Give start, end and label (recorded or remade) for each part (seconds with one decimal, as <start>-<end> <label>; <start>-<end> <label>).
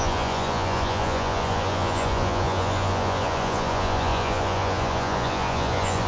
0.0-6.1 remade